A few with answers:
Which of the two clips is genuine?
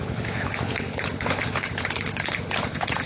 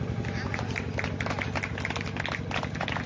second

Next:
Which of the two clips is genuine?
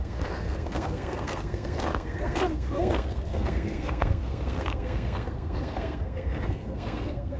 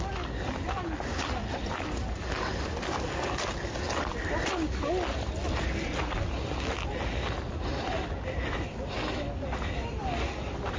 second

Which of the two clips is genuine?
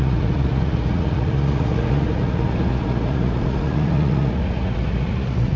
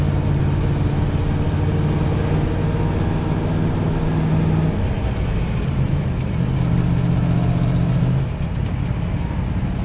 second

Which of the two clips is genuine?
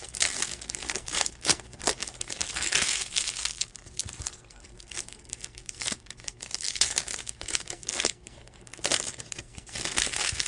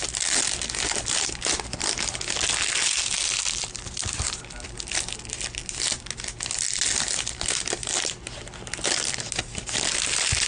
second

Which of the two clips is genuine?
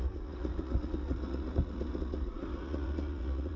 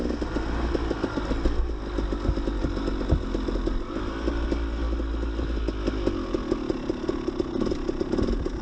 second